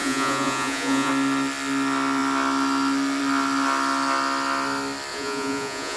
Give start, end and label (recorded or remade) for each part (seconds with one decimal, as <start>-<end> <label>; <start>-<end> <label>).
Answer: 0.0-1.1 remade; 1.1-5.1 recorded; 5.1-6.0 remade